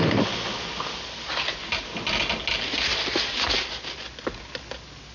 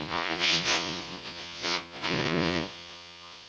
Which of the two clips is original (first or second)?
first